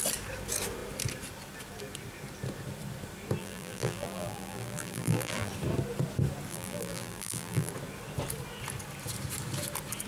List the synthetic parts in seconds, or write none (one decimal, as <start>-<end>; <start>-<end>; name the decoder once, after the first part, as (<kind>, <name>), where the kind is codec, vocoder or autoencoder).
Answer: 3.4-5.5 (vocoder, BigVGAN v2); 6.5-7.7